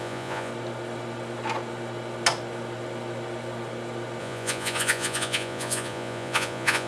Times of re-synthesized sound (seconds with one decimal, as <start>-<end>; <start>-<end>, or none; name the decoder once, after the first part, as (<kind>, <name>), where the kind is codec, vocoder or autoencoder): 0.0-0.5 (vocoder, Vocos); 4.2-6.9